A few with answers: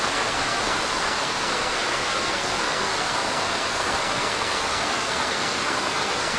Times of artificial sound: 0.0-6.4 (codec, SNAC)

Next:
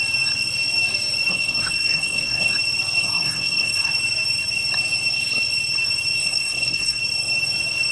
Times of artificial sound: 1.3-2.5 (codec, SNAC); 3.0-3.9; 6.2-7.0

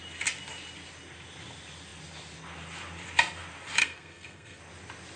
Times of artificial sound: 3.8-4.6 (codec, SNAC)

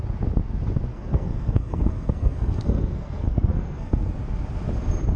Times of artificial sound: 0.9-4.0 (codec, SNAC)

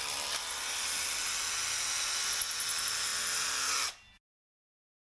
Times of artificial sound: none

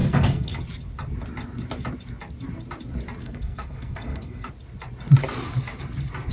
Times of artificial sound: 0.0-0.6 (codec, SNAC); 3.2-4.5